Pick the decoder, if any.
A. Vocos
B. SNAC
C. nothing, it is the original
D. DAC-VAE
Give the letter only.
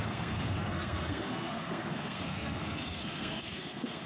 B